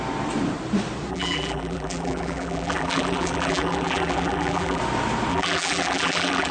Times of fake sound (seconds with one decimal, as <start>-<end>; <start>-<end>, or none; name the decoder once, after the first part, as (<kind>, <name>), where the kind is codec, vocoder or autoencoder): 1.1-4.8 (vocoder, BigVGAN v2); 5.3-6.5